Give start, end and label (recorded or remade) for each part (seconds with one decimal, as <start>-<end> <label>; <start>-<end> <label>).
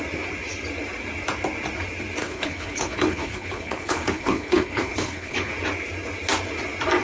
0.0-2.2 recorded; 2.2-5.5 remade; 5.5-7.0 recorded